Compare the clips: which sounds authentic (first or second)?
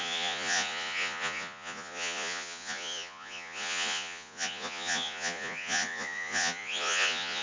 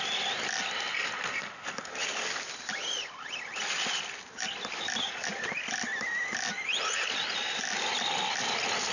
second